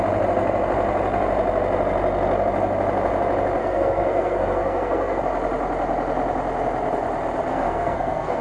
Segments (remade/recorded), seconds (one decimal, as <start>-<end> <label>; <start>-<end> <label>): 0.0-3.6 recorded; 3.6-5.2 remade; 5.2-7.5 recorded; 7.5-8.4 remade